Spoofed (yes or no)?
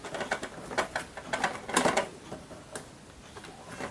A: no